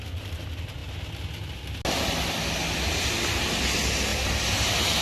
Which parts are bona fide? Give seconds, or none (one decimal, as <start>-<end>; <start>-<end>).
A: 0.0-4.1